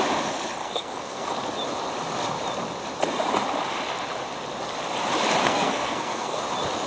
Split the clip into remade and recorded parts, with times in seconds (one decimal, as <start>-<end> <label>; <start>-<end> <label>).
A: 0.0-0.6 recorded; 0.6-1.3 remade; 1.3-5.4 recorded; 5.4-6.4 remade; 6.4-6.9 recorded